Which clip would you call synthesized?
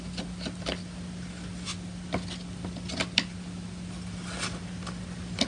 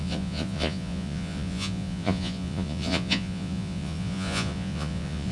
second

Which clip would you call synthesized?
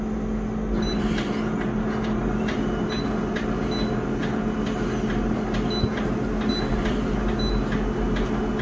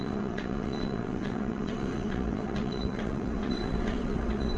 second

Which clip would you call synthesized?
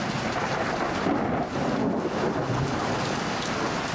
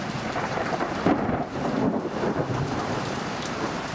second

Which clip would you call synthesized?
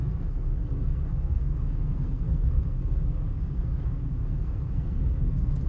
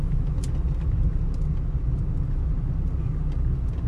first